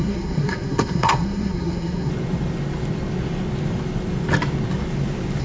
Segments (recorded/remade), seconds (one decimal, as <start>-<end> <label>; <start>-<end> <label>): 0.0-2.1 remade; 2.1-5.4 recorded

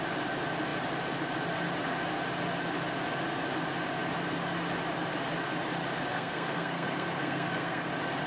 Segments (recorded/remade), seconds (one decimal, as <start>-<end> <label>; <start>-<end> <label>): 0.0-6.1 recorded; 6.1-7.9 remade; 7.9-8.3 recorded

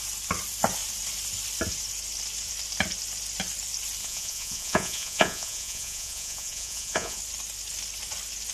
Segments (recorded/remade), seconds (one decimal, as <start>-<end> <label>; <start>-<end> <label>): 0.0-4.0 recorded; 4.0-7.2 remade; 7.2-8.5 recorded

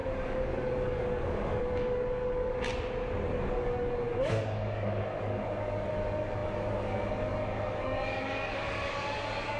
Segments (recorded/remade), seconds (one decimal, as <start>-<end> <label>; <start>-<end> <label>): 0.0-2.7 remade; 2.7-3.4 recorded; 3.4-9.6 remade

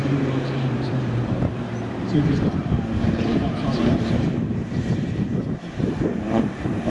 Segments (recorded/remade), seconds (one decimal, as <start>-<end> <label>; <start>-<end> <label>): 0.0-6.9 remade

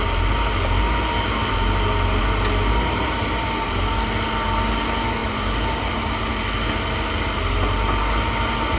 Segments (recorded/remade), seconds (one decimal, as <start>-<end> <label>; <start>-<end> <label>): 0.0-8.8 recorded

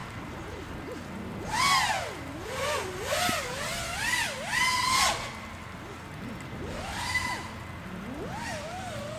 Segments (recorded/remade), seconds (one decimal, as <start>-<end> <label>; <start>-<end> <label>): 0.0-9.2 recorded

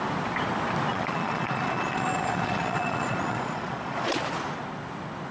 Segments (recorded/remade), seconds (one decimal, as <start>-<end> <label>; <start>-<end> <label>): 0.0-0.9 recorded; 0.9-4.1 remade; 4.1-5.3 recorded